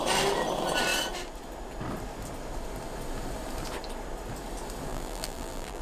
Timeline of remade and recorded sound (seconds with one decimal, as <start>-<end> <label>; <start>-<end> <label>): 0.0-4.9 recorded; 4.9-5.8 remade